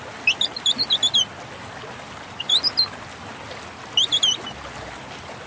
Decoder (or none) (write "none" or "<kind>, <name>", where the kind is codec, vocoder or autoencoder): none